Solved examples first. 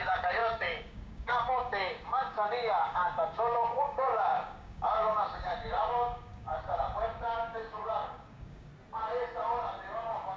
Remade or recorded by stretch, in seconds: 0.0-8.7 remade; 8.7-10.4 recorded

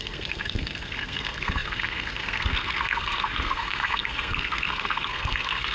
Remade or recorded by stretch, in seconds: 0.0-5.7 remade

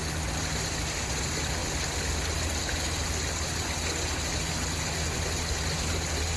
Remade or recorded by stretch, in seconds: 0.0-6.4 recorded

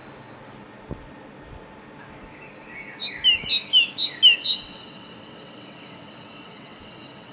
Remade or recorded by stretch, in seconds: 0.0-4.4 recorded; 4.4-7.3 remade

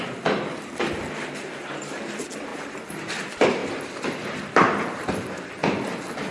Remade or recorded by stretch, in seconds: 0.0-2.5 remade; 2.5-3.0 recorded; 3.0-5.6 remade; 5.6-6.3 recorded